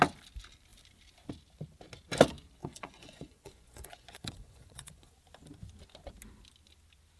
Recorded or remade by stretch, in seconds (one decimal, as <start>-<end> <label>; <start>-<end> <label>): 0.0-2.6 recorded; 2.6-5.1 remade; 5.1-7.2 recorded

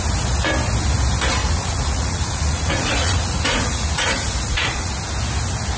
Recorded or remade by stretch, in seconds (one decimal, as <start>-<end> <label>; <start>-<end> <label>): 0.0-1.4 recorded; 1.4-4.9 remade; 4.9-5.8 recorded

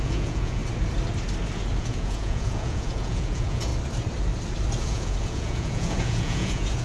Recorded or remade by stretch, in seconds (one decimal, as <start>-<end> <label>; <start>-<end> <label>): 0.0-0.6 remade; 0.6-1.8 recorded; 1.8-3.7 remade; 3.7-4.8 recorded; 4.8-6.8 remade

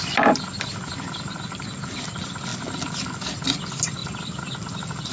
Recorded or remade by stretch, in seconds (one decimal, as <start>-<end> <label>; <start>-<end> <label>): 0.0-5.1 recorded

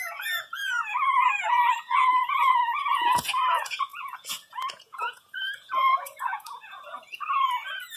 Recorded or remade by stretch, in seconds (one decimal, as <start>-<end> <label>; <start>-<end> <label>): 0.0-8.0 remade

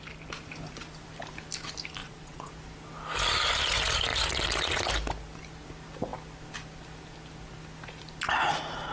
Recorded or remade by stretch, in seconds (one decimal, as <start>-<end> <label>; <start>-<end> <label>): 0.0-2.0 recorded; 2.0-2.5 remade; 2.5-8.9 recorded

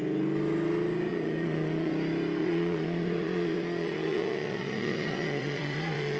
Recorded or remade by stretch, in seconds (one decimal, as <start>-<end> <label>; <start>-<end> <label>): 0.0-1.1 recorded; 1.1-1.9 remade; 1.9-2.4 recorded; 2.4-6.2 remade

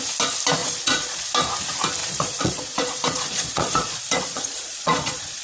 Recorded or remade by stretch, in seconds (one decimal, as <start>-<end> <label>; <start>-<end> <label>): 0.0-0.6 recorded; 0.6-1.3 remade; 1.3-2.0 recorded; 2.0-5.4 remade